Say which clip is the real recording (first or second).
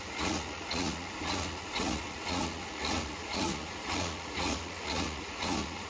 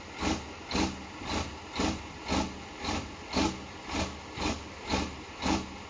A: second